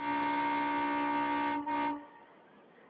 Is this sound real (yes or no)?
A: yes